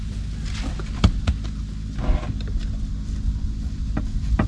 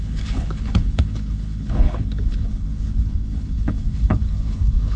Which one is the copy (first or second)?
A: second